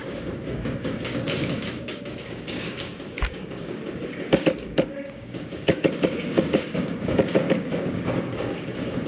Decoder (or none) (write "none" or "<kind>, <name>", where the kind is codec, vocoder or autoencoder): codec, DAC